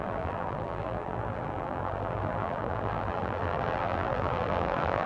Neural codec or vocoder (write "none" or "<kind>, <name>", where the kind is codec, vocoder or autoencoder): vocoder, BigVGAN v2